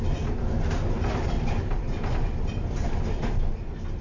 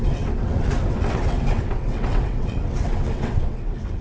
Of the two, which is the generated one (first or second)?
second